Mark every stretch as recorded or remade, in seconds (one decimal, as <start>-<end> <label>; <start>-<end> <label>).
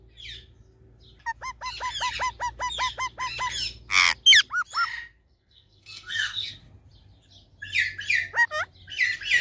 0.0-5.2 recorded; 5.2-6.5 remade; 6.5-9.4 recorded